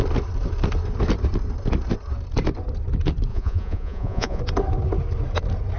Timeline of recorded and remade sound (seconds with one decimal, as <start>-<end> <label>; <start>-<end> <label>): 0.0-3.3 recorded; 3.3-4.4 remade; 4.4-5.8 recorded